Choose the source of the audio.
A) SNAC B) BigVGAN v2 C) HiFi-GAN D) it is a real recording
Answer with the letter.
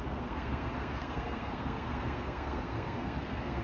A